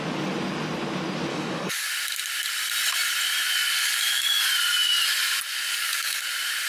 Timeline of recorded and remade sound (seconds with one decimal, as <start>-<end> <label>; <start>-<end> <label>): 0.0-1.3 recorded; 1.3-1.9 remade; 1.9-3.8 recorded; 3.8-4.4 remade; 4.4-5.7 recorded; 5.7-6.2 remade; 6.2-6.7 recorded